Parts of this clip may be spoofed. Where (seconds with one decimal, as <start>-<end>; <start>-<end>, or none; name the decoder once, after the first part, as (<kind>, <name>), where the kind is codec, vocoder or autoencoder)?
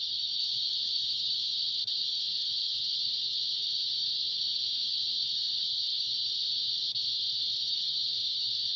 0.0-6.1 (autoencoder, DAC-VAE); 7.6-8.8